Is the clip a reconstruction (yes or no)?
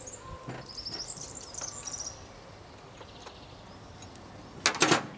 no